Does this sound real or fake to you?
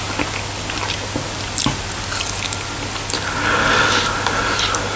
real